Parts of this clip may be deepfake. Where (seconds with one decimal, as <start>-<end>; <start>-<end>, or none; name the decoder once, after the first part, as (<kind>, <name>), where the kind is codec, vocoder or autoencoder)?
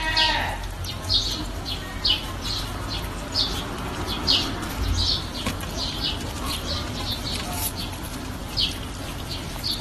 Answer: 8.1-8.7 (vocoder, BigVGAN v2)